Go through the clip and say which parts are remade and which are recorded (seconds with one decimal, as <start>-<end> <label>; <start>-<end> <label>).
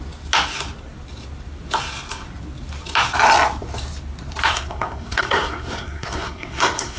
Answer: 0.0-4.5 recorded; 4.5-7.0 remade